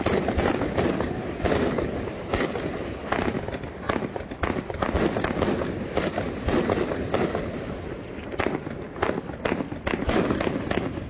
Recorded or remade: recorded